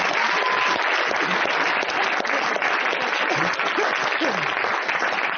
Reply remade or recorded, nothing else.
recorded